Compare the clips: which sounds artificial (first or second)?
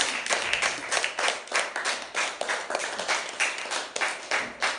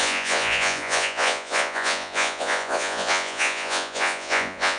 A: second